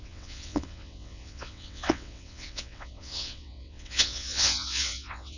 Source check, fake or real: fake